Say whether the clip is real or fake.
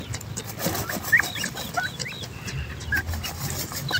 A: real